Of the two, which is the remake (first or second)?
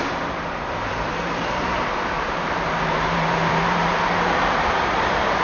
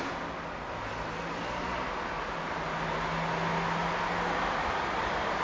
first